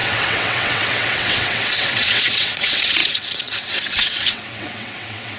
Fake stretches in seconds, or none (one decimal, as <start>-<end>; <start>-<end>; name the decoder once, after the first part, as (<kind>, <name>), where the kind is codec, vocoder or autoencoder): 0.0-5.4 (vocoder, WaveNeXt)